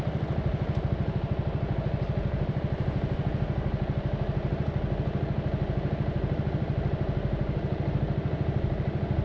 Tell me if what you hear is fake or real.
real